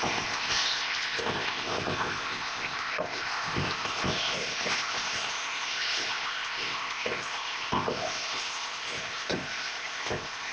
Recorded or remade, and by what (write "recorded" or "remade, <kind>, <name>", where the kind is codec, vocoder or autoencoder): remade, codec, ZipCodec